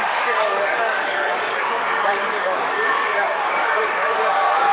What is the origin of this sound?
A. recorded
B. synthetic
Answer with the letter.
B